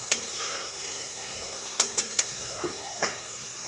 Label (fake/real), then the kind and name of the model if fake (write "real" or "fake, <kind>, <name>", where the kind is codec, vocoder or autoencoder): fake, codec, SNAC